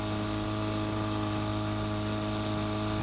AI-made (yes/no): no